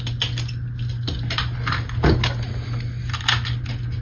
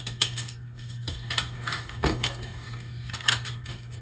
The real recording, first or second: first